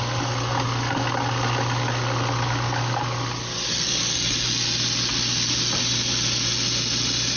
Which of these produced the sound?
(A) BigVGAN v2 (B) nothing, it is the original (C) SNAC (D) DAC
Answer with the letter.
B